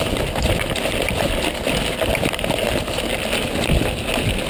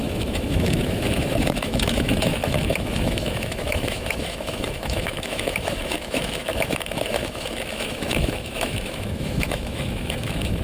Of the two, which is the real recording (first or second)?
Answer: first